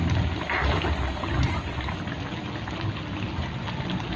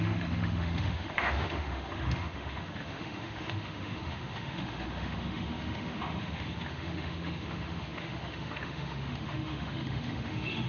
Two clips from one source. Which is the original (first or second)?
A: first